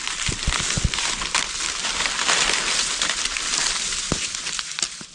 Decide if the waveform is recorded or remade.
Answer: recorded